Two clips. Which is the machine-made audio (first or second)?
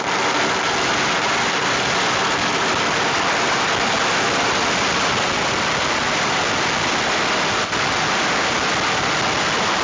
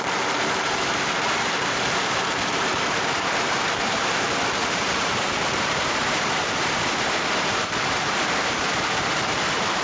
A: second